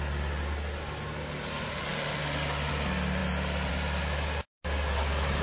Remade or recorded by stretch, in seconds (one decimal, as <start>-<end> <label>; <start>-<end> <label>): 0.0-5.4 recorded